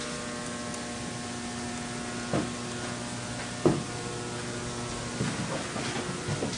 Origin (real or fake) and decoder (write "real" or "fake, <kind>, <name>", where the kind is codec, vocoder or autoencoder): real